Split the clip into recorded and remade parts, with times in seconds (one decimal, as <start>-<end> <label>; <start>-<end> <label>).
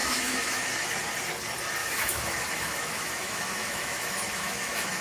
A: 0.0-0.7 remade; 0.7-1.8 recorded; 1.8-5.0 remade